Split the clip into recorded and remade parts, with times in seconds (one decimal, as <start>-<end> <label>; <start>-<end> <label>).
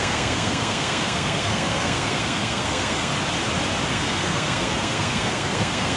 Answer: 0.0-3.1 remade; 3.1-3.9 recorded; 3.9-6.0 remade